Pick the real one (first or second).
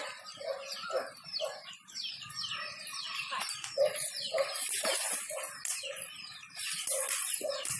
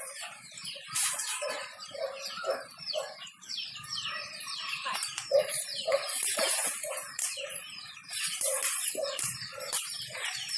first